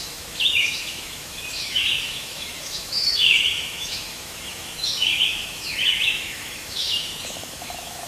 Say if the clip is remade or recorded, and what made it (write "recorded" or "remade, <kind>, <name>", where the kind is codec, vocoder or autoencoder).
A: remade, autoencoder, DAC-VAE